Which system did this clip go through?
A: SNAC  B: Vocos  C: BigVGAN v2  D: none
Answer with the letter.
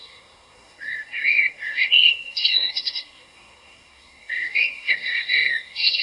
A